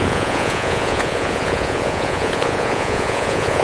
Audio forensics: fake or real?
fake